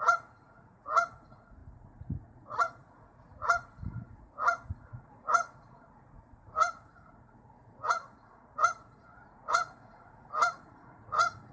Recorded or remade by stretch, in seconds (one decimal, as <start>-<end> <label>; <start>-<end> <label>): 0.0-11.5 remade